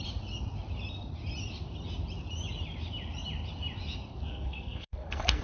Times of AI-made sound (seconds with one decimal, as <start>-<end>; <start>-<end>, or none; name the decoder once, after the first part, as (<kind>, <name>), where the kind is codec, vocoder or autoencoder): 4.3-5.4 (codec, SNAC)